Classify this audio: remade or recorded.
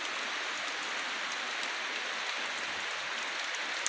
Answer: recorded